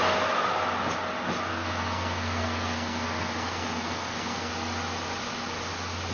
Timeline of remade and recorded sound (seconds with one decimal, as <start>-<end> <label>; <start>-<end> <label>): 0.0-1.5 recorded; 1.5-4.5 remade; 4.5-6.1 recorded